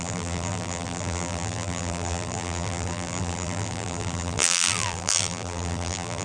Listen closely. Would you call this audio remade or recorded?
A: remade